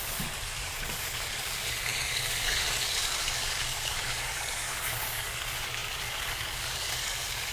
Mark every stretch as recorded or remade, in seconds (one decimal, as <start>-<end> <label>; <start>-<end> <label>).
0.0-7.5 remade